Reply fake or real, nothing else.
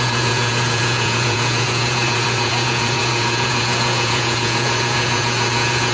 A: fake